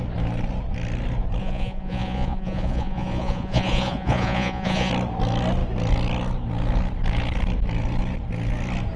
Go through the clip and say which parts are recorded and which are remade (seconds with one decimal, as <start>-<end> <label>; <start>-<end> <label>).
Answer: 0.0-1.4 recorded; 1.4-4.9 remade; 4.9-9.0 recorded